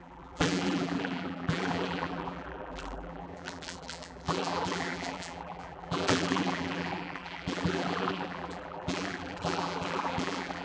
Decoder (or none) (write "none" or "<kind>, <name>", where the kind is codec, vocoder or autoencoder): vocoder, BigVGAN v2